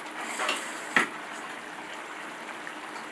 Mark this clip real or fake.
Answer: real